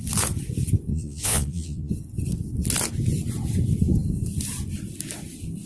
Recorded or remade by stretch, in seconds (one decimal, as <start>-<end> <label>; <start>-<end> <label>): 0.0-0.9 recorded; 0.9-1.9 remade; 1.9-5.7 recorded